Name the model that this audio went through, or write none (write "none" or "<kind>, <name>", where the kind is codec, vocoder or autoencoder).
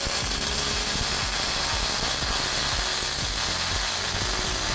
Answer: none